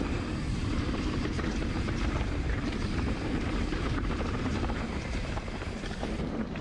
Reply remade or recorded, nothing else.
remade